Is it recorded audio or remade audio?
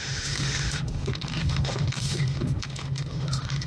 remade